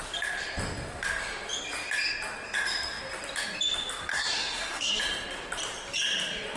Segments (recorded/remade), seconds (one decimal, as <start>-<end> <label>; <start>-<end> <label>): 0.0-4.1 recorded; 4.1-5.0 remade; 5.0-6.6 recorded

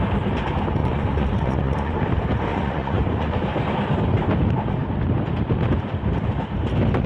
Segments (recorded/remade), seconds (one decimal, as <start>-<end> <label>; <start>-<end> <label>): 0.0-0.8 recorded; 0.8-2.0 remade; 2.0-2.5 recorded; 2.5-3.4 remade; 3.4-7.1 recorded